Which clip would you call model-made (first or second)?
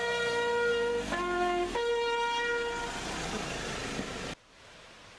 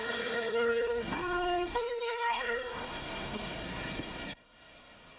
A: second